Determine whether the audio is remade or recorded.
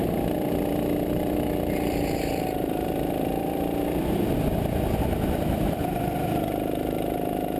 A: remade